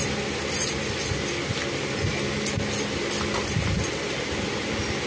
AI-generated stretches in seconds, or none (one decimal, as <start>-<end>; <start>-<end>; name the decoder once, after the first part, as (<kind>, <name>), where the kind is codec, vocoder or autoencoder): none